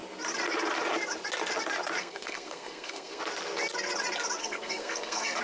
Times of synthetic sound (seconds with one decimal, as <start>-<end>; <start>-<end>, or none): 2.0-3.2; 4.4-5.4